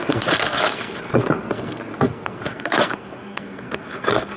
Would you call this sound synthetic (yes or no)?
yes